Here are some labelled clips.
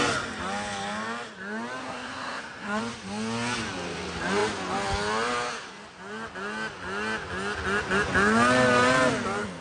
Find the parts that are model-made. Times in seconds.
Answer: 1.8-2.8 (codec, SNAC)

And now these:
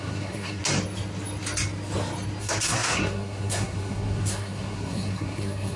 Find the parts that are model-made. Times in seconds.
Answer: 0.0-0.6 (codec, SNAC); 2.4-5.8

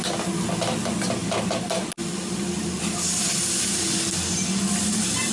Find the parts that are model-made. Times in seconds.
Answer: none

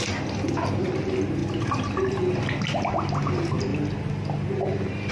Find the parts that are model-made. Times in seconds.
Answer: none